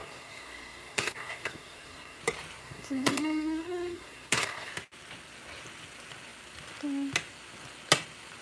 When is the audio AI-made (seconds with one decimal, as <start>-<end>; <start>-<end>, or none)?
0.0-2.2; 2.6-4.7